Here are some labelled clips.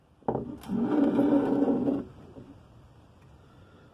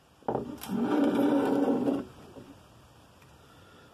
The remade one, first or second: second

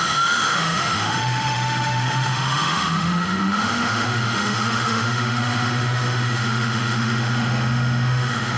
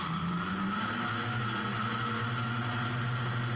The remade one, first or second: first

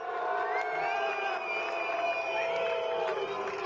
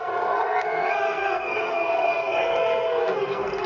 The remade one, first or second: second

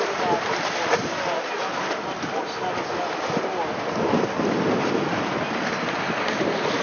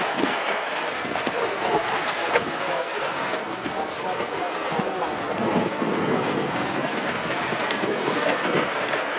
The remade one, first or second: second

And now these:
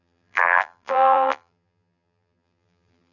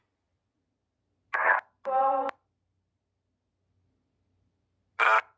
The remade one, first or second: first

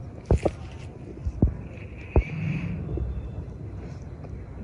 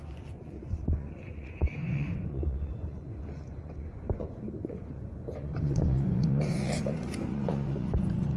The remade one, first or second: second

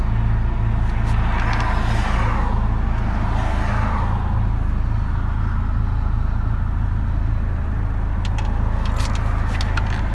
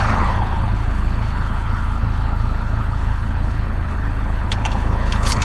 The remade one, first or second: second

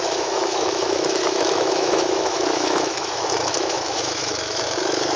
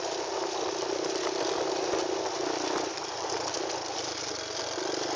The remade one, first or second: first